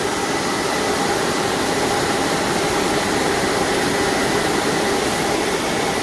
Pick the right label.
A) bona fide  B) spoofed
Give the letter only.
A